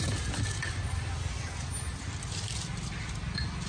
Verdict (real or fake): real